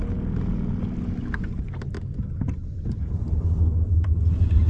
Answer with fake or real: real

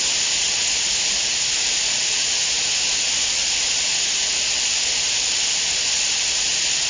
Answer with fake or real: real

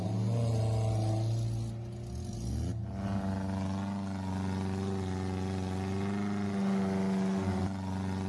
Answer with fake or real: real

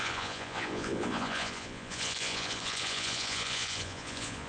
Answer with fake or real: fake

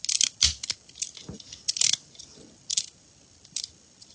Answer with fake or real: real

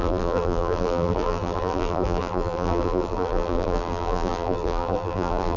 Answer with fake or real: fake